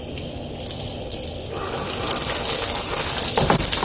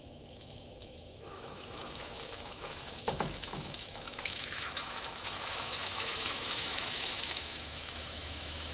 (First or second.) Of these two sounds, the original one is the first